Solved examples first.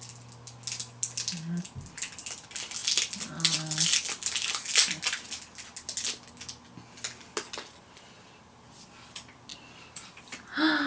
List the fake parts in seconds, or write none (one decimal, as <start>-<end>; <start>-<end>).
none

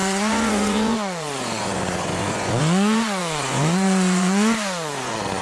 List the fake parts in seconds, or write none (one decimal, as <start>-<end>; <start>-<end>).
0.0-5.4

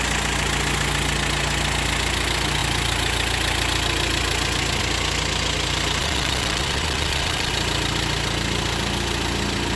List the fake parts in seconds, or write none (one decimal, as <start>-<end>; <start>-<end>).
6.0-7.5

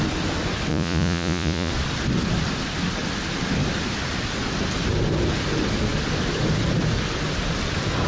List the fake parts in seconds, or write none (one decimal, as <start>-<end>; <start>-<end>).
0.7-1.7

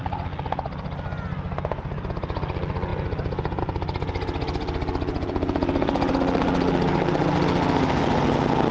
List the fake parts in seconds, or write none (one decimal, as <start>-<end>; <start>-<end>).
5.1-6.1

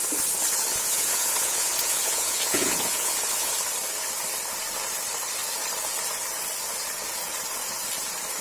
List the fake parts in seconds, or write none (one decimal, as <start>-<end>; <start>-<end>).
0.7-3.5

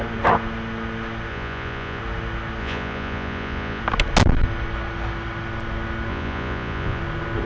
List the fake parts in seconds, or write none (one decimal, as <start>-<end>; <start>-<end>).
1.3-2.0; 2.6-3.8; 6.1-7.0